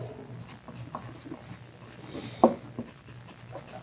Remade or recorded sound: recorded